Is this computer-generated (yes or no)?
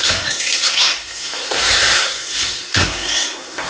yes